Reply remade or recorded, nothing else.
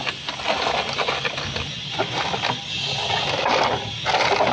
recorded